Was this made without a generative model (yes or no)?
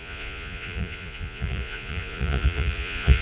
no